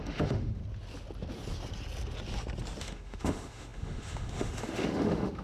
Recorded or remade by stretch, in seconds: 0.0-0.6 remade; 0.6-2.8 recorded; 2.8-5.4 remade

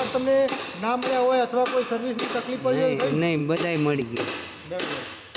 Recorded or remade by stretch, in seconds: 0.0-3.4 recorded; 3.4-4.0 remade; 4.0-4.6 recorded; 4.6-5.4 remade

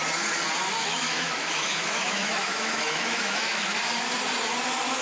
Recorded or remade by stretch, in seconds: 0.0-0.8 recorded; 0.8-3.8 remade; 3.8-5.0 recorded

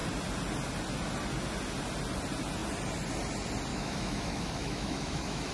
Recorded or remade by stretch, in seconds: 0.0-3.7 recorded; 3.7-5.5 remade

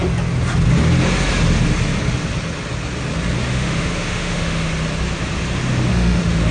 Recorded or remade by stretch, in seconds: 0.0-3.5 recorded; 3.5-4.7 remade; 4.7-5.9 recorded; 5.9-6.5 remade